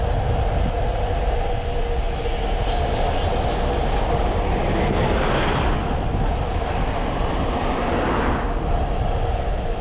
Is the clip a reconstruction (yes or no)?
no